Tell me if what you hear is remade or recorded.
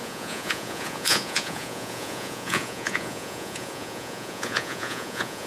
remade